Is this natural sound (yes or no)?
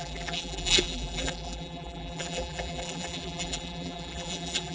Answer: no